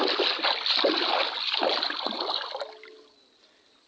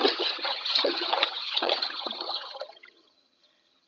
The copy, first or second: second